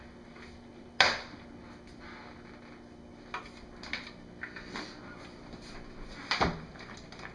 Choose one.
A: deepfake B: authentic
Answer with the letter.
B